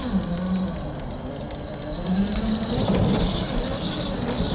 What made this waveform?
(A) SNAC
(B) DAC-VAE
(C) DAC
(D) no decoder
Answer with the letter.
D